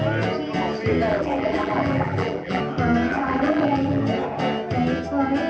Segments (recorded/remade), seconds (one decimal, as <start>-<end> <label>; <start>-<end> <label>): 0.0-1.1 recorded; 1.1-2.6 remade; 2.6-3.1 recorded; 3.1-4.0 remade; 4.0-5.5 recorded